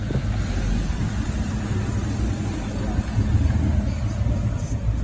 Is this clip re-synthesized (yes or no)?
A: no